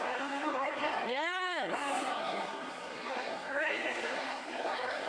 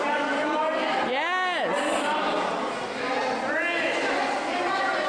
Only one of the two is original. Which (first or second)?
second